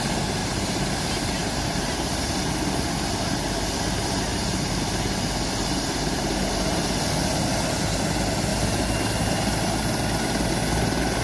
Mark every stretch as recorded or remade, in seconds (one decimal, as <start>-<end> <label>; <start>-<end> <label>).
0.0-0.4 recorded; 0.4-2.5 remade; 2.5-4.3 recorded; 4.3-4.8 remade; 4.8-11.2 recorded